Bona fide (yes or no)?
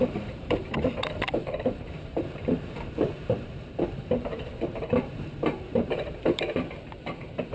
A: no